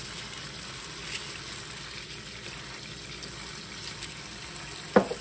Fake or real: real